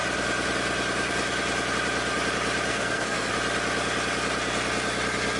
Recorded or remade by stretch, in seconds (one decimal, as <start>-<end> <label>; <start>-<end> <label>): 0.0-2.7 recorded; 2.7-3.3 remade; 3.3-5.4 recorded